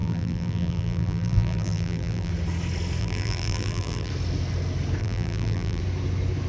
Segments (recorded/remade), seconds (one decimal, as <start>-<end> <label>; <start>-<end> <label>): 0.0-2.3 remade; 2.3-3.0 recorded; 3.0-4.1 remade; 4.1-5.0 recorded; 5.0-5.8 remade; 5.8-6.5 recorded